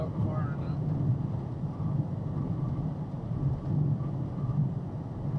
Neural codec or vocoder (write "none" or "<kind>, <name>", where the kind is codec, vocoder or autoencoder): none